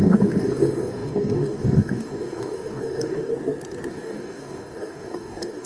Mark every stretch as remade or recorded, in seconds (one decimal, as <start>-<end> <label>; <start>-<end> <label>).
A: 0.0-3.3 remade; 3.3-3.9 recorded; 3.9-5.7 remade